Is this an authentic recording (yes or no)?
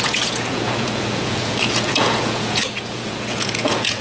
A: no